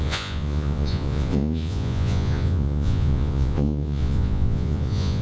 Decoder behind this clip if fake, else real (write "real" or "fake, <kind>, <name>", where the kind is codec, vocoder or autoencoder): fake, vocoder, Vocos